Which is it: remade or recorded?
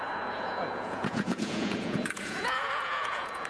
remade